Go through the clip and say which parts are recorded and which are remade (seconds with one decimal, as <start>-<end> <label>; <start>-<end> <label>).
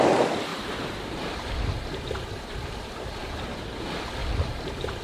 0.0-0.5 recorded; 0.5-1.7 remade; 1.7-3.2 recorded; 3.2-3.7 remade; 3.7-4.2 recorded; 4.2-5.0 remade